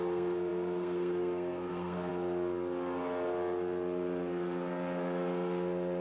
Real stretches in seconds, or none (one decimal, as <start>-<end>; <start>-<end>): 2.1-6.0